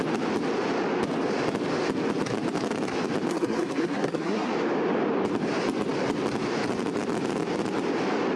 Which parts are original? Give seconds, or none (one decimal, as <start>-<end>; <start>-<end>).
0.0-3.3; 4.5-8.4